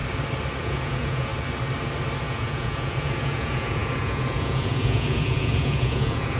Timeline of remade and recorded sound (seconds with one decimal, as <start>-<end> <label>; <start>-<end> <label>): 0.0-0.6 recorded; 0.6-1.3 remade; 1.3-2.2 recorded; 2.2-6.4 remade